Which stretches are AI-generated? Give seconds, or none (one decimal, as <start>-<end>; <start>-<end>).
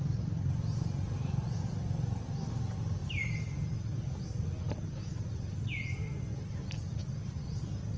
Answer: none